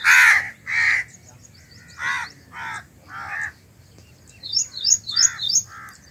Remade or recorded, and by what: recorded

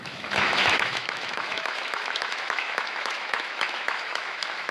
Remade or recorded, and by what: remade, autoencoder, DAC-VAE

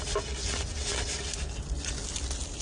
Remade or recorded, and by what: recorded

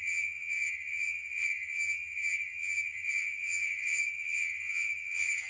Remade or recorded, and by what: remade, vocoder, HiFi-GAN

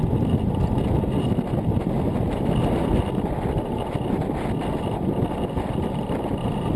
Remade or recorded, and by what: recorded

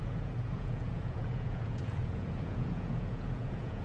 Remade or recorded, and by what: remade, vocoder, Vocos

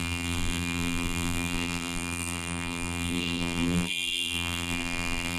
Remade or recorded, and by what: remade, vocoder, BigVGAN v2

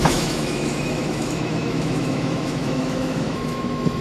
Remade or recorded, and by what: remade, autoencoder, DAC-VAE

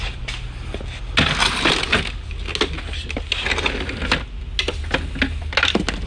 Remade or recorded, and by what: recorded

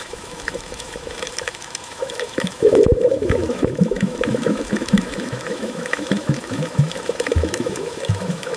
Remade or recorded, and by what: remade, autoencoder, DAC-VAE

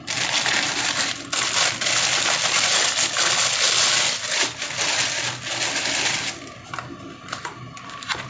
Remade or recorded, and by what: recorded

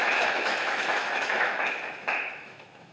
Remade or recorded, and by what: remade, autoencoder, DAC-VAE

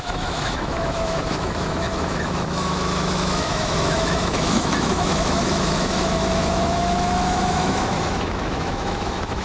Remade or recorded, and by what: remade, autoencoder, DAC-VAE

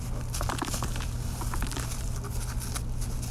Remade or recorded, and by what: recorded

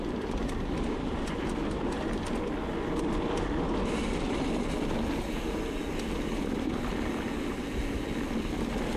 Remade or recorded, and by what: recorded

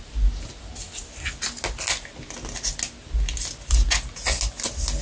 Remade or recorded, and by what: recorded